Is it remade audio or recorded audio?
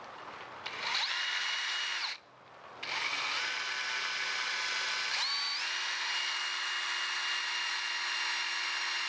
recorded